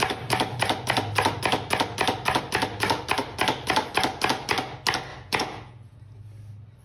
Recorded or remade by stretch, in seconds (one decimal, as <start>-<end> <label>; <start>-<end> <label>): 0.0-5.1 recorded; 5.1-6.0 remade; 6.0-6.8 recorded